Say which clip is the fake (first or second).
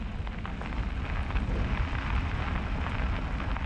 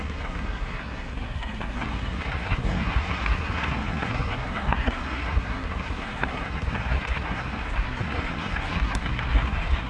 second